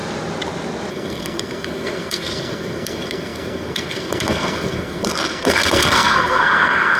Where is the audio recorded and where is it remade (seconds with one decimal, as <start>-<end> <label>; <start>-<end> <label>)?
0.0-0.9 recorded; 0.9-7.0 remade